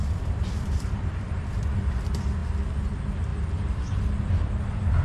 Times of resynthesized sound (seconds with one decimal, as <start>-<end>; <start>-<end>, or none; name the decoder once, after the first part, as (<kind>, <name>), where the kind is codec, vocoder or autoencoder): 0.0-2.4 (vocoder, BigVGAN v2); 2.9-5.0